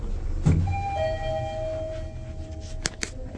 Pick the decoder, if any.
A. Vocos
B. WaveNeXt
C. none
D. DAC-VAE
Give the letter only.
C